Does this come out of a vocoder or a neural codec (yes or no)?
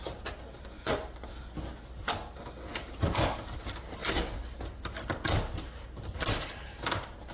no